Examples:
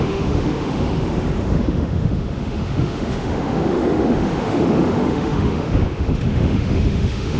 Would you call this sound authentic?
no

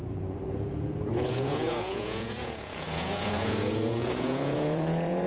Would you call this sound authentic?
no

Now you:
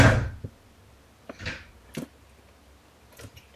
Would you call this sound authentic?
yes